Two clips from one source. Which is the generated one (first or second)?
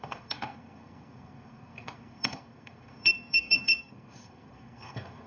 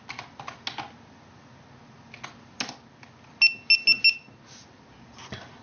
first